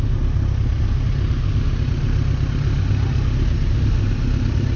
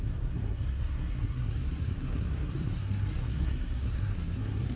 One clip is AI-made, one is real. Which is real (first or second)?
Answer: first